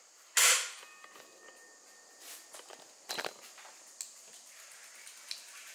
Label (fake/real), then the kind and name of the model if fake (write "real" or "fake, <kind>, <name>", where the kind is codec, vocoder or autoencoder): real